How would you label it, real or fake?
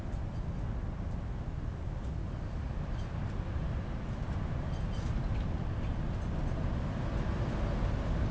real